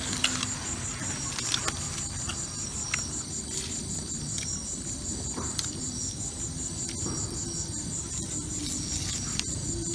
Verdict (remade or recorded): recorded